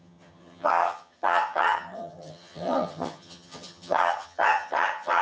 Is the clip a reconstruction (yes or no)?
yes